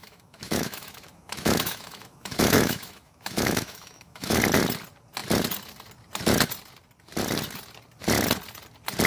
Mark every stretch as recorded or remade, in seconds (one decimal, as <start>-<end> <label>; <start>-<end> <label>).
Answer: 0.0-4.4 remade; 4.4-9.1 recorded